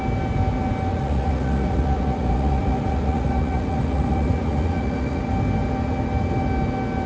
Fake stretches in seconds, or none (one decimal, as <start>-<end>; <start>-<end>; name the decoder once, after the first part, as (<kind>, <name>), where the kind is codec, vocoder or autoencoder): 0.9-5.2 (vocoder, Vocos)